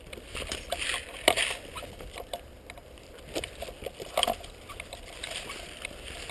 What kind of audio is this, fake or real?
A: fake